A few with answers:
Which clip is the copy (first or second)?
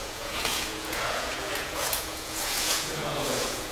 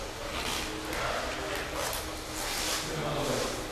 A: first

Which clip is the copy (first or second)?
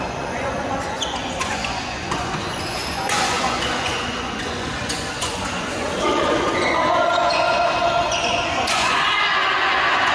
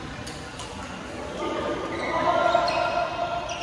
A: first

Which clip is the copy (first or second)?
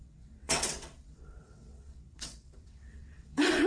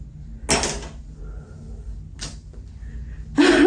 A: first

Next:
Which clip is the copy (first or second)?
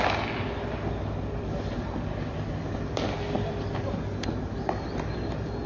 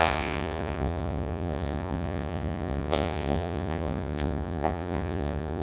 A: second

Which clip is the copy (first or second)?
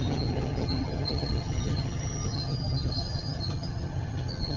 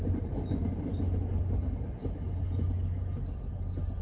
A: first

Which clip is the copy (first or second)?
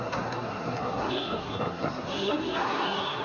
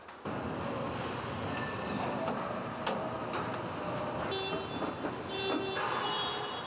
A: first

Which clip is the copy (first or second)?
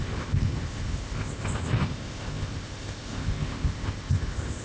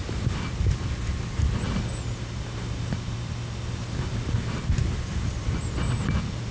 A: first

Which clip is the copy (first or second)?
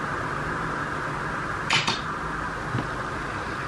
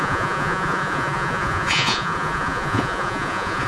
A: second